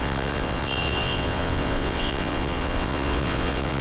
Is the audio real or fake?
fake